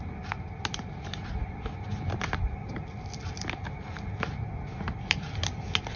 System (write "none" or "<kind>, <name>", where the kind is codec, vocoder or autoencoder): none